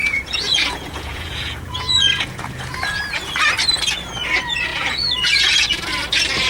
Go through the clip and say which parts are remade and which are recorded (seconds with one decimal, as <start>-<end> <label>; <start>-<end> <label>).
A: 0.0-3.0 remade; 3.0-4.7 recorded; 4.7-5.9 remade; 5.9-6.5 recorded

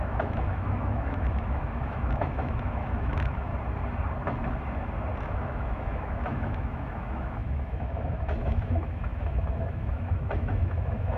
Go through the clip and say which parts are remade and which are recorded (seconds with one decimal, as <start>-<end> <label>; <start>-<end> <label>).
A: 0.0-3.5 remade; 3.5-5.2 recorded; 5.2-11.2 remade

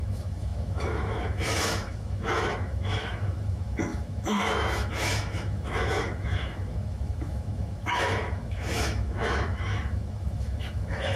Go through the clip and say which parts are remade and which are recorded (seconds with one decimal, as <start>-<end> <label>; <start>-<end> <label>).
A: 0.0-11.2 remade

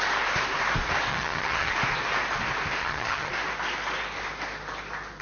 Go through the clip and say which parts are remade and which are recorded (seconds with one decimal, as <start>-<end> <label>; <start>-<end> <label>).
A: 0.0-1.1 recorded; 1.1-1.7 remade; 1.7-2.8 recorded; 2.8-3.3 remade; 3.3-5.2 recorded

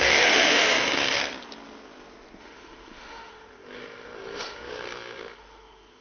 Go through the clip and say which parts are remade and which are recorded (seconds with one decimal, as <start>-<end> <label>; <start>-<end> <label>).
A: 0.0-1.2 remade; 1.2-2.4 recorded; 2.4-6.0 remade

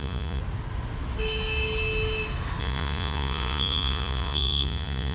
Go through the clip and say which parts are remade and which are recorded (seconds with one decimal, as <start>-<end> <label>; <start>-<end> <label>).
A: 0.0-0.4 remade; 0.4-2.6 recorded; 2.6-5.1 remade

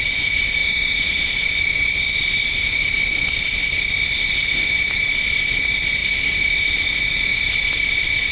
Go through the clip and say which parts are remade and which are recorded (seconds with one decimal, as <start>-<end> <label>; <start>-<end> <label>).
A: 0.0-8.3 recorded